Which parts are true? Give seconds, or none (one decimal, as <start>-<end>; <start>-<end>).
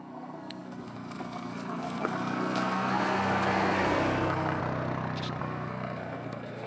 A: 4.6-5.4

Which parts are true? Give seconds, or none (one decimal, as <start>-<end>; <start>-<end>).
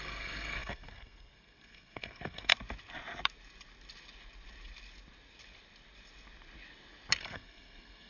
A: 2.5-7.2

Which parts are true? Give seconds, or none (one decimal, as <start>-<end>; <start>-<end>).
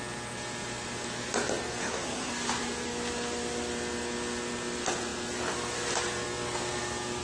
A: 0.0-1.8; 2.3-7.2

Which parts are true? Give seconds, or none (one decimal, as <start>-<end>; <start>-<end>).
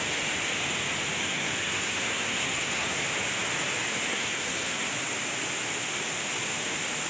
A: 0.0-1.2; 3.0-4.1; 4.9-7.1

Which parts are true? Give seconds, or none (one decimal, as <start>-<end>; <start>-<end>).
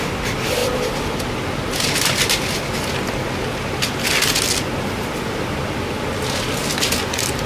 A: 0.0-7.5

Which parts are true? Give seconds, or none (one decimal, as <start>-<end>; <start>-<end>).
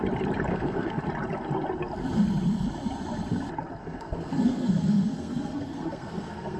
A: 0.0-0.5; 1.0-3.8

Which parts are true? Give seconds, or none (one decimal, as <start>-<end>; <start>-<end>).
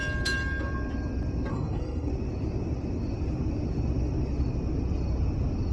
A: 0.0-1.5; 2.1-5.7